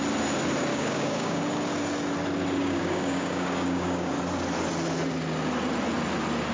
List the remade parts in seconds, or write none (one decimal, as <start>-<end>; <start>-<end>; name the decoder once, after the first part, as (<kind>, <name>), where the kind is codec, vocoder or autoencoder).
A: 0.7-1.4 (codec, DAC); 2.6-4.1